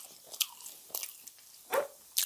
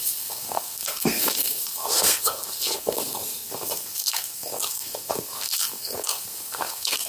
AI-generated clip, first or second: second